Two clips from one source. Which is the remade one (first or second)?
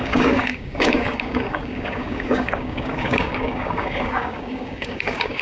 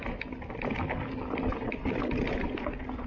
first